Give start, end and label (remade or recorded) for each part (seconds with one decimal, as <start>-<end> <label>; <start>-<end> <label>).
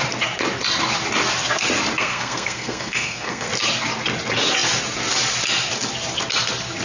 0.0-2.0 recorded; 2.0-3.5 remade; 3.5-6.8 recorded